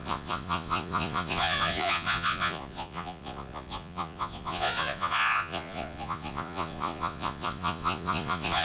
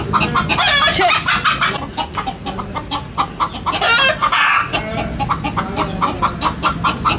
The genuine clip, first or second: second